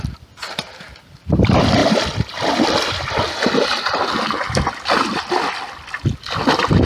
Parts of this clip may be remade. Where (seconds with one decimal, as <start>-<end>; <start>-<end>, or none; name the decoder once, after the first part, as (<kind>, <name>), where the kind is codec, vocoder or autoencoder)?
1.8-5.9 (vocoder, BigVGAN v2)